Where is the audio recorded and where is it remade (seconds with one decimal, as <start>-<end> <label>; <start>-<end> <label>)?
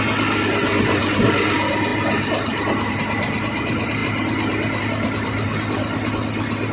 0.0-6.7 recorded